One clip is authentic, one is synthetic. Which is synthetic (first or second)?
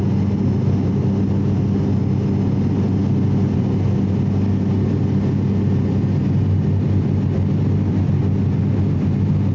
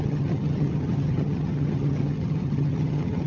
second